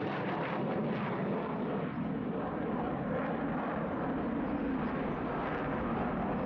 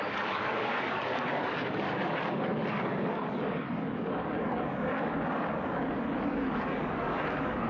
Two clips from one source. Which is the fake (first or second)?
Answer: second